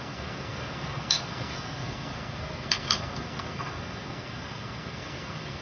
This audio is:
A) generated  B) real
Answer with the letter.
A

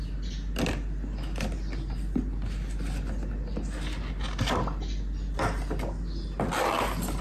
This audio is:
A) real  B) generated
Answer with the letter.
A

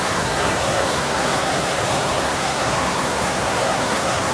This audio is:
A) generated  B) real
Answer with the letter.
A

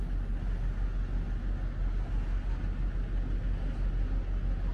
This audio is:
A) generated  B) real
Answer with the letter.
B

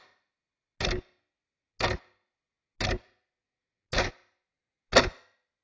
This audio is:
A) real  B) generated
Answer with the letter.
A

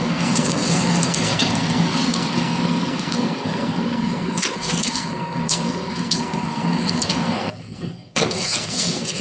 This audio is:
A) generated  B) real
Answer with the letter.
A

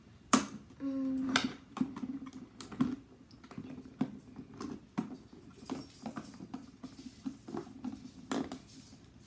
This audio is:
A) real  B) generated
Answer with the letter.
A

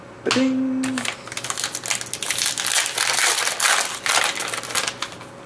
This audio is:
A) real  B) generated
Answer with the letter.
A